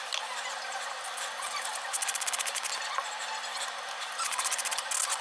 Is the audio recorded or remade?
recorded